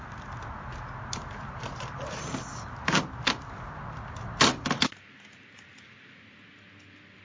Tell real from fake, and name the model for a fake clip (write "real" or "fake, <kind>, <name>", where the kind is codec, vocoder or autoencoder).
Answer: real